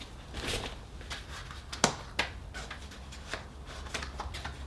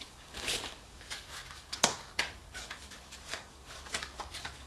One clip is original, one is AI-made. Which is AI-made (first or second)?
second